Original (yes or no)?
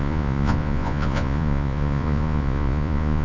no